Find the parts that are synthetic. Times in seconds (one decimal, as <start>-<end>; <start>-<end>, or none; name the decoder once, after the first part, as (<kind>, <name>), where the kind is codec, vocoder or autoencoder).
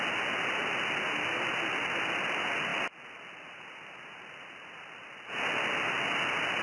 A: none